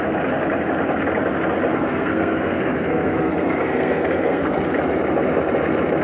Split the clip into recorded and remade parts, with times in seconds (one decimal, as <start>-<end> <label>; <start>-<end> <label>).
0.0-1.7 recorded; 1.7-4.6 remade; 4.6-6.0 recorded